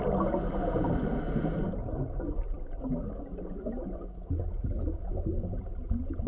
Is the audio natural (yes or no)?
yes